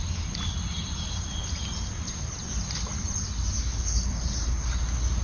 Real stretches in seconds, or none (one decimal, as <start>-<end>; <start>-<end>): 0.0-3.7; 4.7-5.2